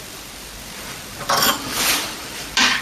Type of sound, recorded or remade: remade